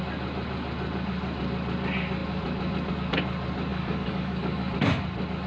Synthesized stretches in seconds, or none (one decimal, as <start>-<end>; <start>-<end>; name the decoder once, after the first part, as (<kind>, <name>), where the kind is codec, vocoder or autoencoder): 3.7-4.7 (codec, DAC)

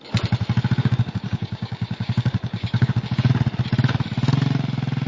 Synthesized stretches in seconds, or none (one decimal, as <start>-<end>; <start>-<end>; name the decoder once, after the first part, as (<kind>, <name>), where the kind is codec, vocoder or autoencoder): 0.8-3.3 (codec, DAC)

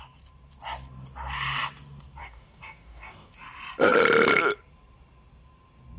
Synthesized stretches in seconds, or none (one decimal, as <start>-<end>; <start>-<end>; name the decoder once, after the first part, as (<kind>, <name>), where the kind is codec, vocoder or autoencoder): 2.2-3.3 (codec, DAC)

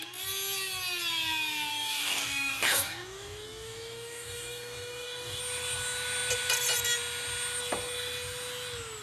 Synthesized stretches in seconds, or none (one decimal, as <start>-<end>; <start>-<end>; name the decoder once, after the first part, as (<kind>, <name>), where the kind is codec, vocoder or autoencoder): 1.7-5.4 (codec, DAC)